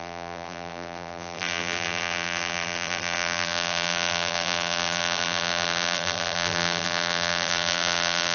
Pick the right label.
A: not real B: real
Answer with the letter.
A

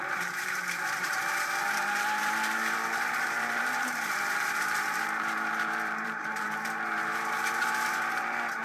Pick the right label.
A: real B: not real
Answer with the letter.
B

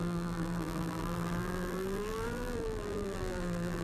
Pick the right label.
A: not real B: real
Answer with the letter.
A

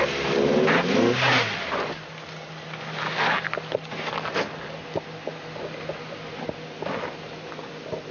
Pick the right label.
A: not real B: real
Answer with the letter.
B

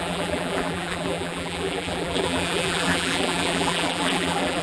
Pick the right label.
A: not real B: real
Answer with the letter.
A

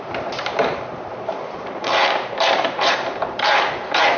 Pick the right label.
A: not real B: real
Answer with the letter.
A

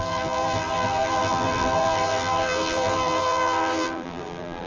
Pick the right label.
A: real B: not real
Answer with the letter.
B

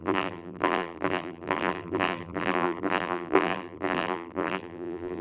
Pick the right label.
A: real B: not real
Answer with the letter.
B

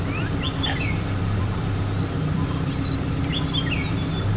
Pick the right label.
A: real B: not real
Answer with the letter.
B